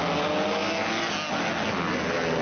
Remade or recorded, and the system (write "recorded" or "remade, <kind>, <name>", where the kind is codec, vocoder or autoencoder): recorded